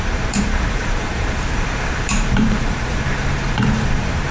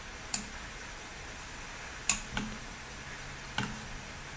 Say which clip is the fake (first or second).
first